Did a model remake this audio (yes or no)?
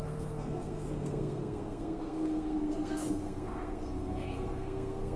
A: yes